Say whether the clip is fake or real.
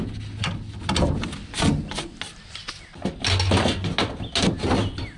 real